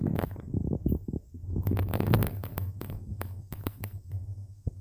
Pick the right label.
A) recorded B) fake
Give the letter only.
B